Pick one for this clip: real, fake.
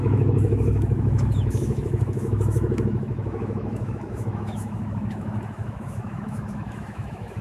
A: fake